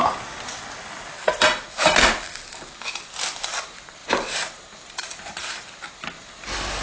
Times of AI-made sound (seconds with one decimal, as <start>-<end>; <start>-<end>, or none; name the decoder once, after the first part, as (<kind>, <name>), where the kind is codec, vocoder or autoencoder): none